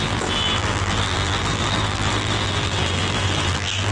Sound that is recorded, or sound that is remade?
remade